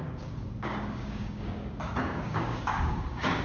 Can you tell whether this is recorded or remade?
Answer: remade